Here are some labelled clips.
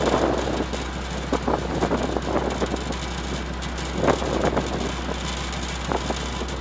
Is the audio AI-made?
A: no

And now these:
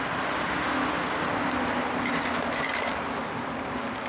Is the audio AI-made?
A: no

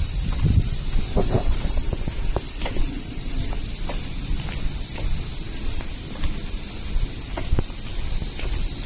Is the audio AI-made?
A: yes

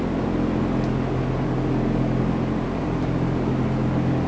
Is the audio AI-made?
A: no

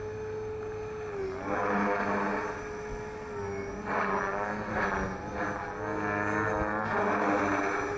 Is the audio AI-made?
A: no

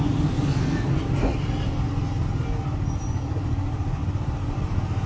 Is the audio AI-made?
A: no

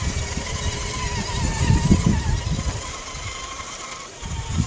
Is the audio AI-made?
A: yes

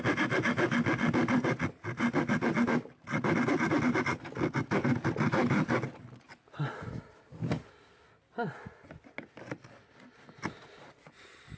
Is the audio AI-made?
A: no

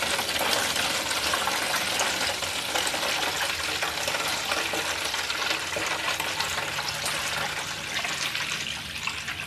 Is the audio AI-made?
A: no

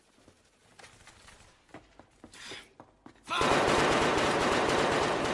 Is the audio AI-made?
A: no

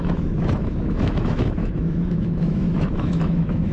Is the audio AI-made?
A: yes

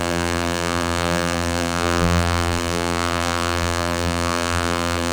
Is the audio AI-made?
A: yes